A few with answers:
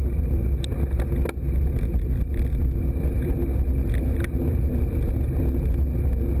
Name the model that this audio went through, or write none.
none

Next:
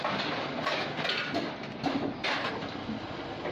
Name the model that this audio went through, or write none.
vocoder, BigVGAN v2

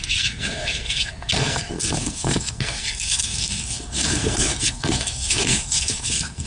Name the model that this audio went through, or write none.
codec, SNAC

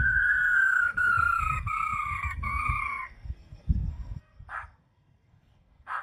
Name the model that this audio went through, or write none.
codec, SNAC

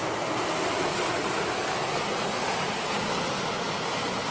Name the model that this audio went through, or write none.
none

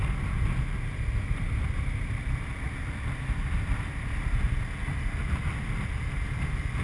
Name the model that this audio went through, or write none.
none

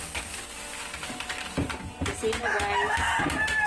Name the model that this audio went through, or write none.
none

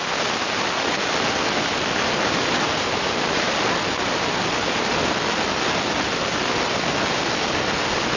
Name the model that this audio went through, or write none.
none